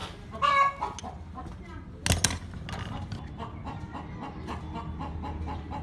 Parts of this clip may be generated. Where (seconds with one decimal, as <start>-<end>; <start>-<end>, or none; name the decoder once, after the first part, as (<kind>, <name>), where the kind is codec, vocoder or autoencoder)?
none

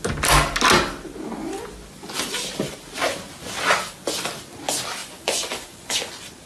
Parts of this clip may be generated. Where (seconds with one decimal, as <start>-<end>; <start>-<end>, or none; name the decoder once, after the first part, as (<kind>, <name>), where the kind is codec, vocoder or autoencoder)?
5.0-6.1 (vocoder, Vocos)

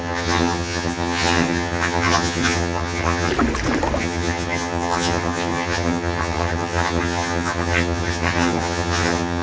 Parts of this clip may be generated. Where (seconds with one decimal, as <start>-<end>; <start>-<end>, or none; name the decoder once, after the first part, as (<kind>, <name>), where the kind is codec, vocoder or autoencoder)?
0.0-3.3 (vocoder, HiFi-GAN); 4.0-9.4

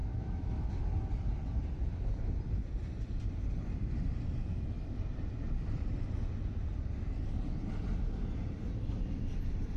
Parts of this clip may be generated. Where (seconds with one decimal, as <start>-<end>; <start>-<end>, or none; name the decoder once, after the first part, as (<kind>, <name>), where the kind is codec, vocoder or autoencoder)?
0.0-0.7 (autoencoder, DAC-VAE)

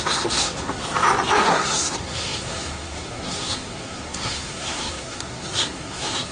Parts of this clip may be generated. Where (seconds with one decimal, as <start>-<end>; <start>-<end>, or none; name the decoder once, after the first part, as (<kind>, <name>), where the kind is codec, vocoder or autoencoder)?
0.0-0.8 (codec, SNAC); 1.4-6.3

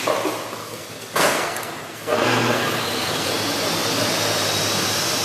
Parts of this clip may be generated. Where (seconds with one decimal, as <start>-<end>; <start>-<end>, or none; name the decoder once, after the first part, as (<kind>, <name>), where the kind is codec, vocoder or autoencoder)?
0.6-3.3 (codec, SNAC)